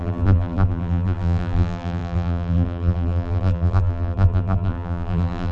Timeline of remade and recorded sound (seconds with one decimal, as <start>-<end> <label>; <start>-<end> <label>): 0.0-5.5 remade